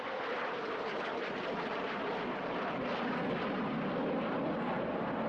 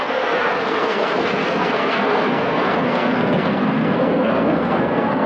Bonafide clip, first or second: first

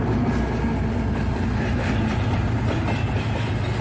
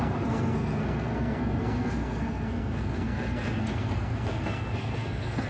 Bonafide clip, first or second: first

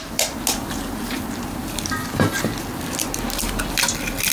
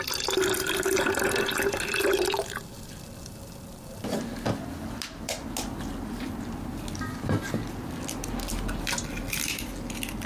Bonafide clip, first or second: second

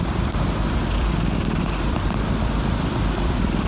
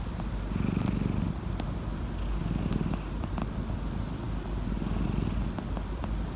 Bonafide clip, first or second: second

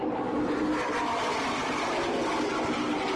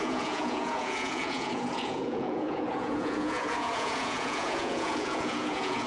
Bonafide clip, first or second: first